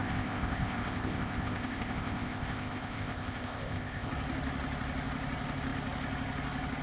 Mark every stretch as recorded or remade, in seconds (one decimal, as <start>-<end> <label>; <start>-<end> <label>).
0.0-4.1 remade; 4.1-6.8 recorded